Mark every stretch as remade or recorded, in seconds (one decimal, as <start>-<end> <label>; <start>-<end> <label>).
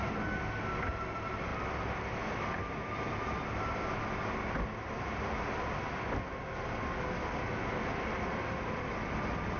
0.0-9.6 recorded